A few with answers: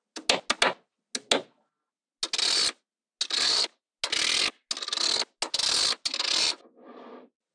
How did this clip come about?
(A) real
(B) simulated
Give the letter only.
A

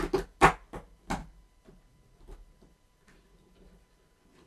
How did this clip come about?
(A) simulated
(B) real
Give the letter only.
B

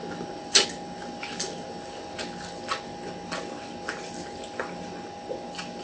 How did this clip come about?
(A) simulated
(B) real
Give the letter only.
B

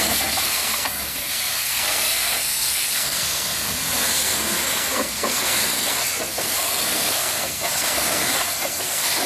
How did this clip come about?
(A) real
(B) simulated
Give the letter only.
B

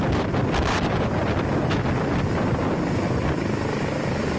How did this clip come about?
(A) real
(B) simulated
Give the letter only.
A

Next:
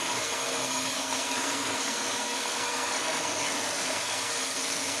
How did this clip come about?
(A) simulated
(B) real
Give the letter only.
A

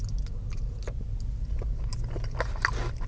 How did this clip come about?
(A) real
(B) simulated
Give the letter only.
A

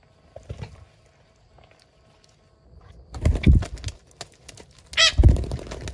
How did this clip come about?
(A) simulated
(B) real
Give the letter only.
B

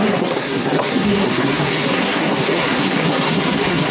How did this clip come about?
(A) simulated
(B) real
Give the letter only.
A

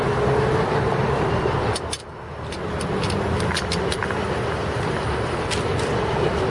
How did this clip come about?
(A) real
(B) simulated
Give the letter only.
A